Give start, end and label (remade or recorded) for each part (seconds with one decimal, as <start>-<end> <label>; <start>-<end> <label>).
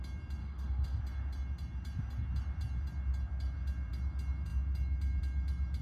0.0-0.4 recorded; 0.4-1.0 remade; 1.0-5.8 recorded